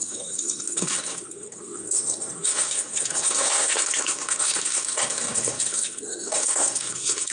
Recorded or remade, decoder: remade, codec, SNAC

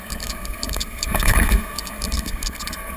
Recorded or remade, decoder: remade, codec, SNAC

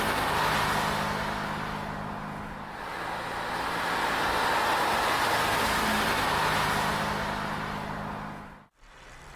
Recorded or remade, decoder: recorded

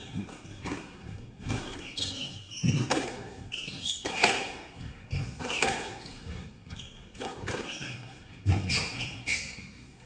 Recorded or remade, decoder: remade, codec, SNAC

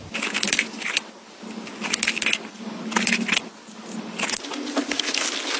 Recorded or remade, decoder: recorded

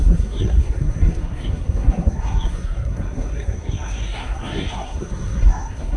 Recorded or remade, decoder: remade, codec, SNAC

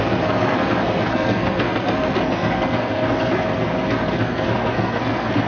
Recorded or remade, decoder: remade, codec, SNAC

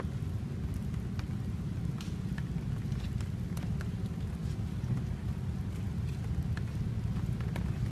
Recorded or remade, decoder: recorded